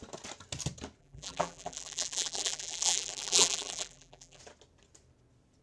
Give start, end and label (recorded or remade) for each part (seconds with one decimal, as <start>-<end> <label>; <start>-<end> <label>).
0.0-1.0 recorded; 1.0-4.4 remade; 4.4-5.6 recorded